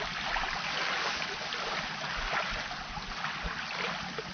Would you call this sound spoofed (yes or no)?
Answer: no